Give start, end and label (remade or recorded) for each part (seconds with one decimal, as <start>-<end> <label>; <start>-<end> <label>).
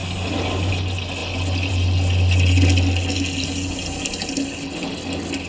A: 0.0-5.5 recorded